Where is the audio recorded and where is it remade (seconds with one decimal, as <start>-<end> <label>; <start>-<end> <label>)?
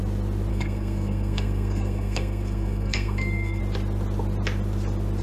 0.0-0.5 recorded; 0.5-3.6 remade; 3.6-5.2 recorded